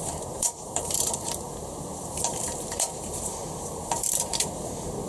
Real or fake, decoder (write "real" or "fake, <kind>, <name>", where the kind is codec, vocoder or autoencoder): fake, vocoder, BigVGAN v2